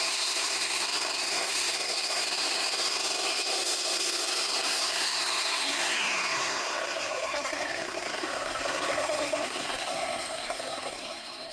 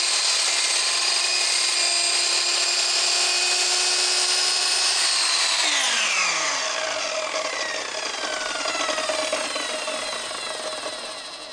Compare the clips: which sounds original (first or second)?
second